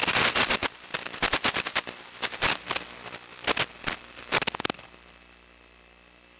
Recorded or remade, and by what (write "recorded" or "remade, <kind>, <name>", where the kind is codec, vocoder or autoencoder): recorded